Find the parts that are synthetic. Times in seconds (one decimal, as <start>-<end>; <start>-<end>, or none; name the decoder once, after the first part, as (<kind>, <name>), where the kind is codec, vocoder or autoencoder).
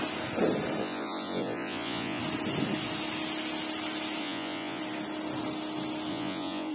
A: 0.8-2.2 (vocoder, Vocos); 4.2-4.8; 6.1-6.7